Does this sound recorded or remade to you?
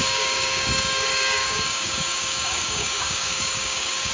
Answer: remade